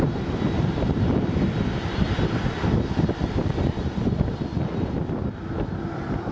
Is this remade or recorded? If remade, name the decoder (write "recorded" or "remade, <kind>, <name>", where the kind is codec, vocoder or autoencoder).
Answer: recorded